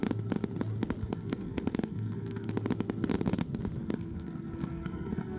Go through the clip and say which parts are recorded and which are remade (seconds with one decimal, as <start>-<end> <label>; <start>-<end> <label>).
0.0-1.0 recorded; 1.0-2.5 remade; 2.5-3.8 recorded; 3.8-5.4 remade